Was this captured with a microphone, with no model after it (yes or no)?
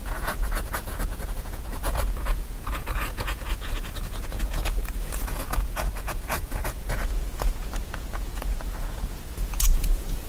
no